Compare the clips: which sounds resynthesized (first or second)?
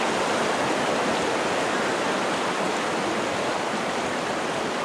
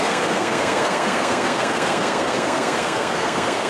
second